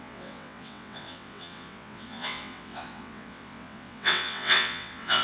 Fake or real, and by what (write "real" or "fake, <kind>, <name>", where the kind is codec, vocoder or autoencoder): fake, vocoder, WaveNeXt